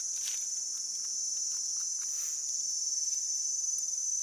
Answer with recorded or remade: recorded